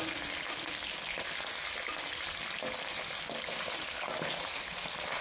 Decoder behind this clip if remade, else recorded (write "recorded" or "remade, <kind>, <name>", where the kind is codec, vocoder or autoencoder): recorded